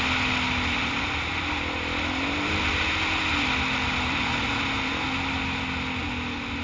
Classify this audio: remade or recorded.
recorded